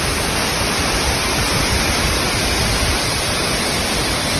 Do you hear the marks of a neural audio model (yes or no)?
yes